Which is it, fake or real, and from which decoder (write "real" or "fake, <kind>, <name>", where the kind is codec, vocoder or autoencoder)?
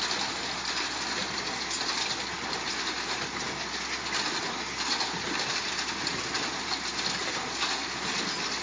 real